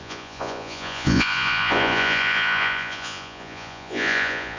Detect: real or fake fake